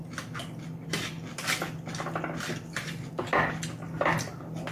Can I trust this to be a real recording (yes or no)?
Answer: yes